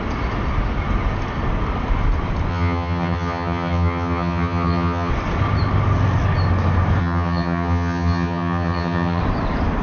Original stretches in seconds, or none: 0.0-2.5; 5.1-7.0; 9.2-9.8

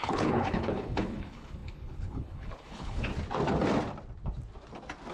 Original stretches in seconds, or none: 3.1-5.1

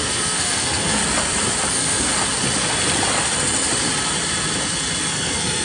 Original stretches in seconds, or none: 1.0-1.7; 2.1-5.0

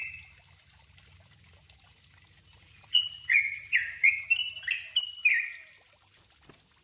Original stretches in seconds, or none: 0.0-2.5; 4.2-6.8